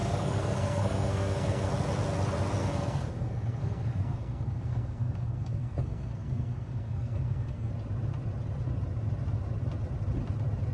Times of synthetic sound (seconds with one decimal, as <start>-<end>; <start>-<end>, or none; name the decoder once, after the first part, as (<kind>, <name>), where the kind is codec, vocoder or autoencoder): 0.0-1.7 (codec, SNAC); 2.6-7.7